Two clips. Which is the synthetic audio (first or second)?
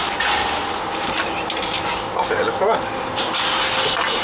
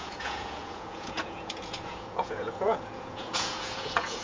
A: second